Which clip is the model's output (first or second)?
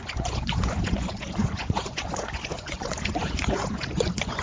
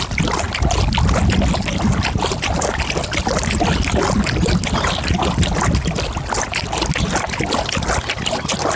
first